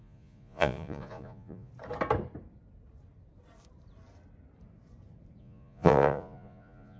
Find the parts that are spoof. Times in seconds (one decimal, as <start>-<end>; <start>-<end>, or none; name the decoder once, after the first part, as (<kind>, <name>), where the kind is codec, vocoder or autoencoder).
0.0-1.7 (vocoder, Vocos); 5.4-7.0